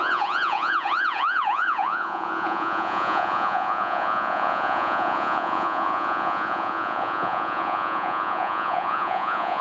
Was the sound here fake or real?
fake